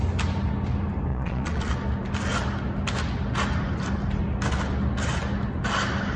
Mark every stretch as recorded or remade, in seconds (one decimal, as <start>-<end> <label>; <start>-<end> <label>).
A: 0.0-1.1 recorded; 1.1-1.7 remade; 1.7-6.2 recorded